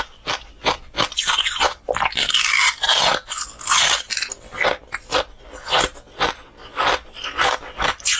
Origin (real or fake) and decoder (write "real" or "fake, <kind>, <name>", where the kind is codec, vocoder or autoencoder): real